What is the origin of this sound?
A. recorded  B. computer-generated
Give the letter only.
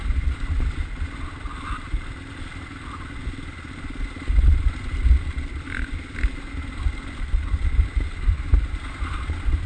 A